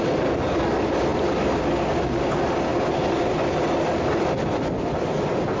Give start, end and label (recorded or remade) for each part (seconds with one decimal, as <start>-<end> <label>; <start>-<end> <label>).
0.0-5.6 recorded